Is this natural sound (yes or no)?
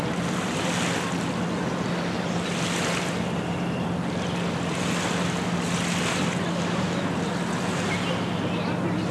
yes